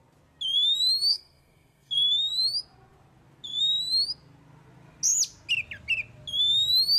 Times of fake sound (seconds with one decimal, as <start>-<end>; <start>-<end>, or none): 1.1-1.9